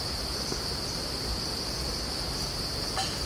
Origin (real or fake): real